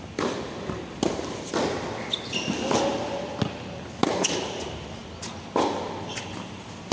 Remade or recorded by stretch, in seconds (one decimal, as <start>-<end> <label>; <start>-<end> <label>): 0.0-6.9 recorded